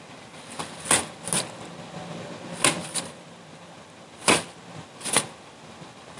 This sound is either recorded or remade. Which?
recorded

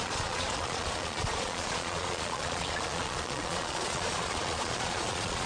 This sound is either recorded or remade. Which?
remade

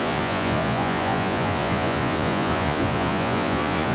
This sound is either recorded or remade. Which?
remade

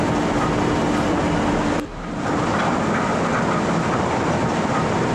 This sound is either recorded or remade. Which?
recorded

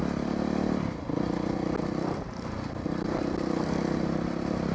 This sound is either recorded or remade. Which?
recorded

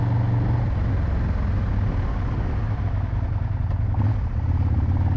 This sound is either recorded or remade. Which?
recorded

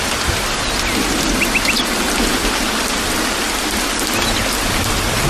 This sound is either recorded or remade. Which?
recorded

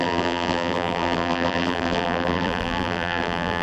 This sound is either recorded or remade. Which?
remade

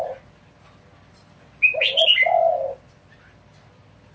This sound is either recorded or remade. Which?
recorded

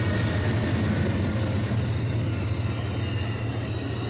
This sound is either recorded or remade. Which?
recorded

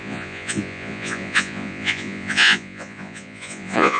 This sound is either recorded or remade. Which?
remade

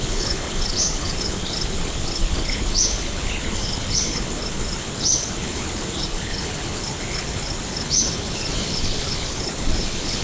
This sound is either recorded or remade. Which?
remade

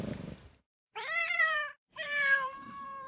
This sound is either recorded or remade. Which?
remade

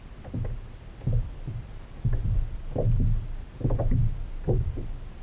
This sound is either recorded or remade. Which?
recorded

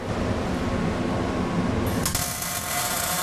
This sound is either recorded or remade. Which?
recorded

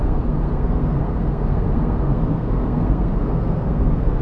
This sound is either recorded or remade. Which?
remade